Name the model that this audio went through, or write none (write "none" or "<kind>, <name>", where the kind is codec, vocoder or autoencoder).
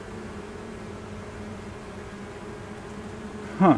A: none